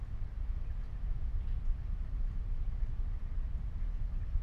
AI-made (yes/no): no